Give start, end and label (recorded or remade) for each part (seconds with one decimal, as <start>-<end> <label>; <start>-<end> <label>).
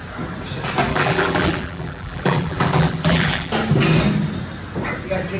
0.0-0.9 recorded; 0.9-3.5 remade; 3.5-5.4 recorded